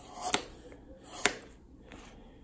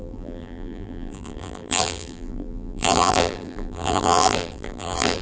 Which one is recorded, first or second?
first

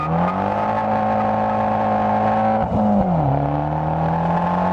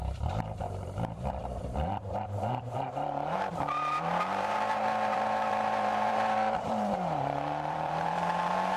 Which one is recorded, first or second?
first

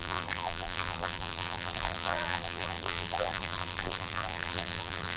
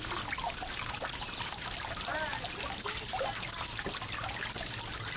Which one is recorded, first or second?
second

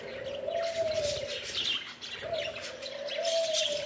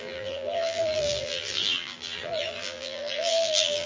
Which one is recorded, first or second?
first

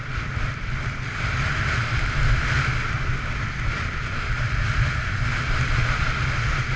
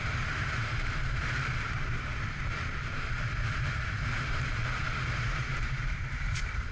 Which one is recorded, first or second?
first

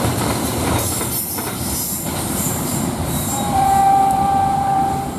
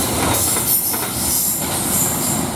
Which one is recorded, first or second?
second